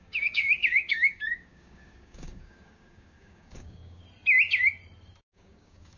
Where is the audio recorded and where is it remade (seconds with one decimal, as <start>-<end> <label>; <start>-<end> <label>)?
0.0-4.0 remade; 4.0-5.3 recorded; 5.3-6.0 remade